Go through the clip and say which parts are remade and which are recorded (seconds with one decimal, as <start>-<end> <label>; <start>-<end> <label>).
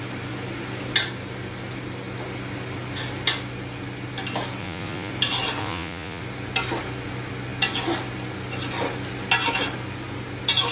0.0-4.6 recorded; 4.6-5.1 remade; 5.1-5.6 recorded; 5.6-6.2 remade; 6.2-10.7 recorded